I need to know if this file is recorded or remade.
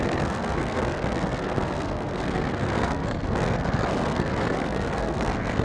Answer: remade